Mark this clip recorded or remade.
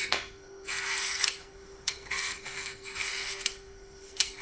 remade